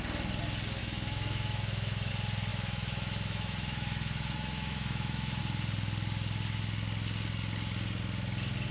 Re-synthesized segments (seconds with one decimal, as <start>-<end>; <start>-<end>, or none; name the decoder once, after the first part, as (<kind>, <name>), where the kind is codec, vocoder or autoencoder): 0.8-2.1 (autoencoder, DAC-VAE); 2.5-5.4